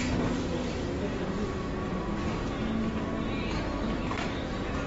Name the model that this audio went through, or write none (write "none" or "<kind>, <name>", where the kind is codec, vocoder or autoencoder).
none